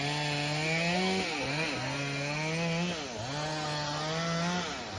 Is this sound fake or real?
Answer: real